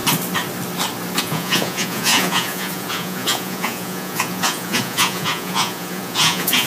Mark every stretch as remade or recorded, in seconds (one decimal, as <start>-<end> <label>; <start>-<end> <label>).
0.0-1.2 recorded; 1.2-6.7 remade